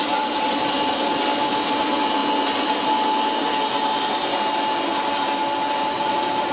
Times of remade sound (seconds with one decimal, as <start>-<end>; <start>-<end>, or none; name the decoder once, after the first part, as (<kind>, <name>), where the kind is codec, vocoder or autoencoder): none